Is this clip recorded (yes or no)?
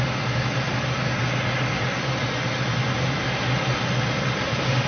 yes